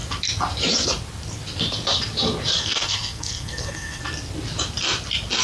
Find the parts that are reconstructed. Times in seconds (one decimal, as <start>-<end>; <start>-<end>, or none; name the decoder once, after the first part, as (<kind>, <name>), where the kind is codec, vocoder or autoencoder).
2.6-4.0 (codec, SNAC)